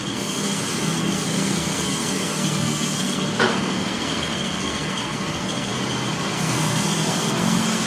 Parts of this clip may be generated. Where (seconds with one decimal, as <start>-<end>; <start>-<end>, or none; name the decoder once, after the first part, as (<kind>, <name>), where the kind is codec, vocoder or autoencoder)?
0.0-5.7 (codec, SNAC); 6.2-7.9